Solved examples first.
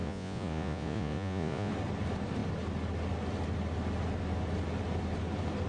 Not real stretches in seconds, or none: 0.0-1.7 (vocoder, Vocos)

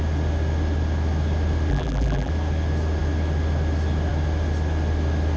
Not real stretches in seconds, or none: 1.7-2.3 (vocoder, BigVGAN v2)

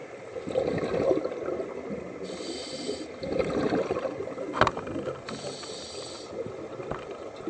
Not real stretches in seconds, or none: none

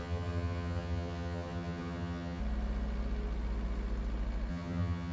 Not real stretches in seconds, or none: 0.0-2.4 (vocoder, HiFi-GAN); 4.5-5.1

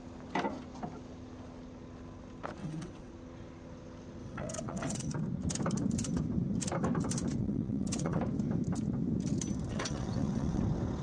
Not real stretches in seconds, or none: 2.6-3.1 (vocoder, WaveNeXt); 4.2-5.1; 7.4-8.2; 9.7-10.6

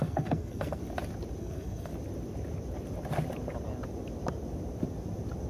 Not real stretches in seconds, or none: 0.0-0.8 (codec, SNAC); 1.4-1.9